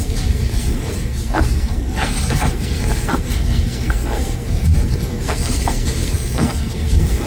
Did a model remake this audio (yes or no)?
yes